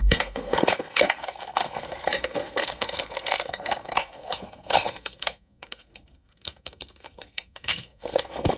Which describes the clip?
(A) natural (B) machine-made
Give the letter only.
B